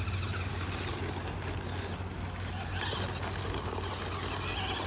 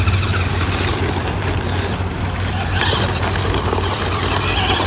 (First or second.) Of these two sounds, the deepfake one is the second